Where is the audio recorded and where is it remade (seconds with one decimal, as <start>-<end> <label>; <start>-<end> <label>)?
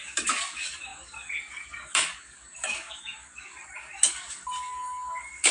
0.0-5.5 remade